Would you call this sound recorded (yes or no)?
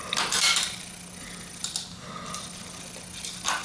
yes